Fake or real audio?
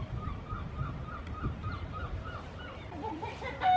fake